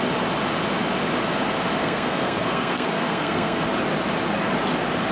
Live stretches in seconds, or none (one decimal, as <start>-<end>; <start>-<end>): 0.0-1.8; 3.6-5.1